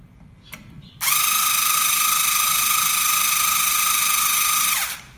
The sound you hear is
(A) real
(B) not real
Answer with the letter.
B